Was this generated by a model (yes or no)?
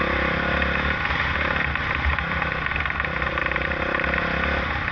no